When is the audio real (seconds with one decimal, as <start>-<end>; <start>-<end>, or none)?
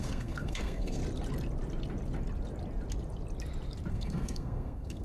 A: 1.0-3.9